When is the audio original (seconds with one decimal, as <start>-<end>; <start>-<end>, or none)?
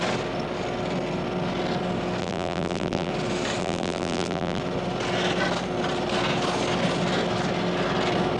0.0-2.2; 3.1-3.6; 4.6-8.4